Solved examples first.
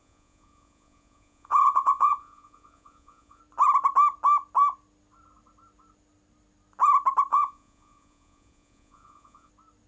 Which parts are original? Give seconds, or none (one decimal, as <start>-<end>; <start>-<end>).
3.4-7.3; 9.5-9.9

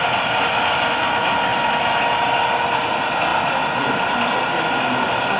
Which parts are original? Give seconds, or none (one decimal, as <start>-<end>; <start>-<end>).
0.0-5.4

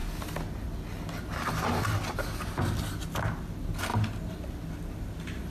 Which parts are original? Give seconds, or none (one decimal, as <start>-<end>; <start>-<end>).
0.0-5.5

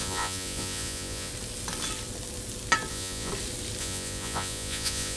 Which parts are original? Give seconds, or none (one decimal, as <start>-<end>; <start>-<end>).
1.3-2.9; 3.3-3.8